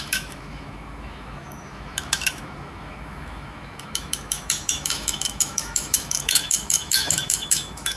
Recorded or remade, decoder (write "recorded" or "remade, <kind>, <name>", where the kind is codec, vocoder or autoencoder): remade, autoencoder, DAC-VAE